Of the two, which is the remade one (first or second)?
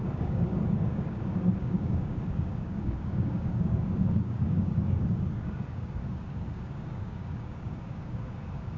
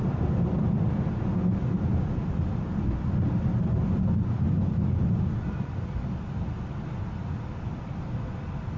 first